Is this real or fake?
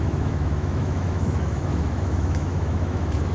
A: fake